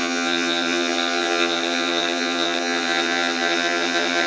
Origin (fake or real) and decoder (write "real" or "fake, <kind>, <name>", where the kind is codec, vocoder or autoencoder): fake, vocoder, HiFi-GAN